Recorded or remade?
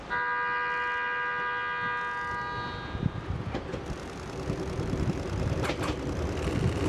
recorded